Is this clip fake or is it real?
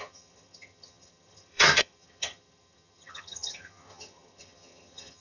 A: fake